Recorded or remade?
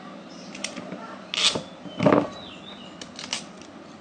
recorded